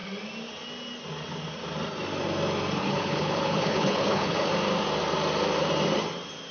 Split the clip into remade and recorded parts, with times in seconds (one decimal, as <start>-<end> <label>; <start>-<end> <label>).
0.0-2.8 recorded; 2.8-4.5 remade; 4.5-6.5 recorded